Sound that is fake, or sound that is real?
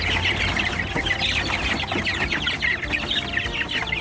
fake